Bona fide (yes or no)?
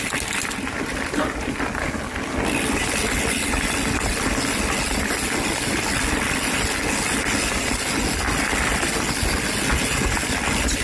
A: yes